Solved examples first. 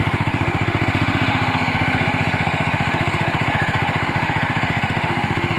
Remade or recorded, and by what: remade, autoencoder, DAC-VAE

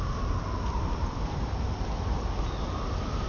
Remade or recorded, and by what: recorded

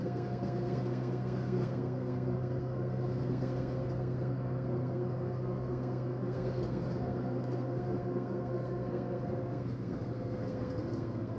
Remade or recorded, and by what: remade, codec, SNAC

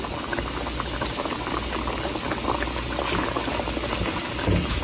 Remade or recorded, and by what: recorded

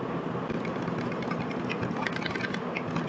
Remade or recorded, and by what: recorded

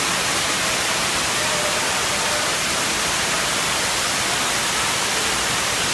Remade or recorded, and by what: recorded